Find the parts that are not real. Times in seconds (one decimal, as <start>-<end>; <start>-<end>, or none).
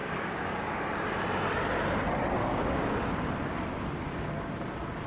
0.0-0.8; 2.4-3.1